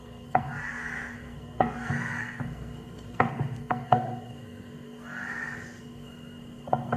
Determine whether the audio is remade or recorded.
remade